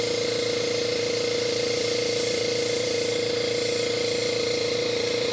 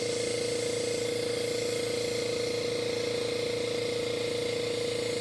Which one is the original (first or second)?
second